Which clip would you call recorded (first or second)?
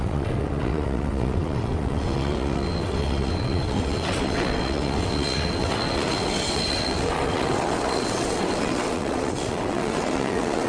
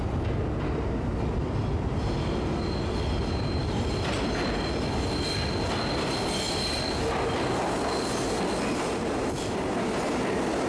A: second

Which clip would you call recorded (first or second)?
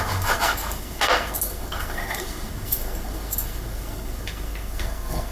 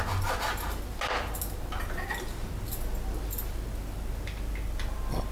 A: second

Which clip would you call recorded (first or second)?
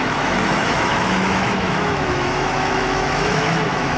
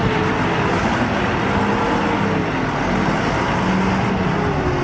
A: second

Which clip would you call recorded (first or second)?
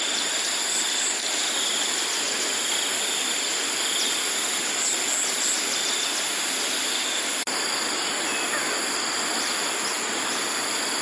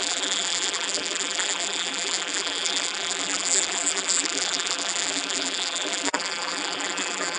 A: first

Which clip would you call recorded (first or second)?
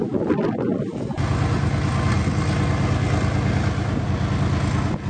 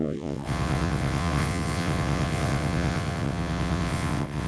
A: first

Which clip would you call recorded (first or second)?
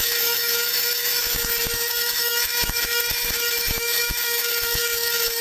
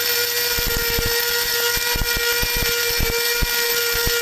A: second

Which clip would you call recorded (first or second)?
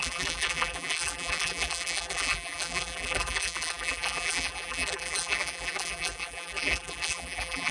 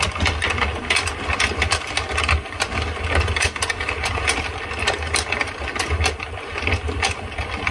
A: second